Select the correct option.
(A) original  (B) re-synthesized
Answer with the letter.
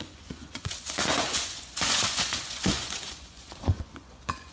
B